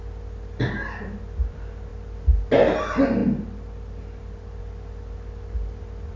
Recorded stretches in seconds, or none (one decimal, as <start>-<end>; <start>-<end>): 0.0-6.2